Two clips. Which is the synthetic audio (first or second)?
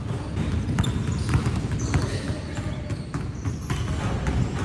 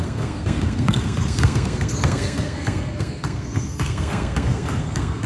second